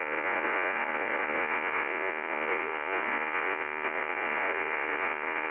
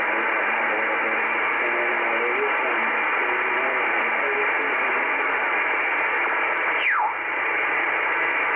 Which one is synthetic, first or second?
first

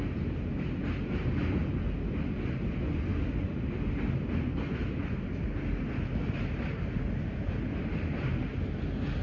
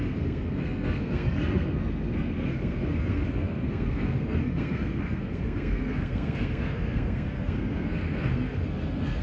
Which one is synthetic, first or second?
second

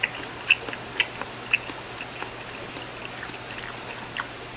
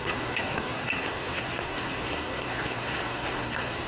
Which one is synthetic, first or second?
second